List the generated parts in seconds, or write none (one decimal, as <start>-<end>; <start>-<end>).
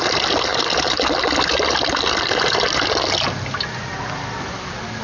none